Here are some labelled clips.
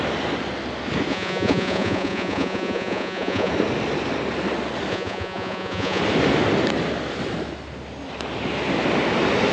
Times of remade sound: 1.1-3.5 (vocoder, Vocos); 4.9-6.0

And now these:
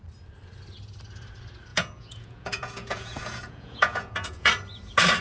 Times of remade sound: 1.7-4.5 (vocoder, Vocos)

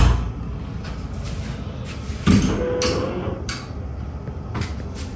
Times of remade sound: none

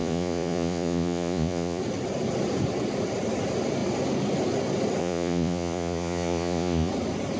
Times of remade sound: 0.0-1.8 (vocoder, Vocos); 5.0-6.9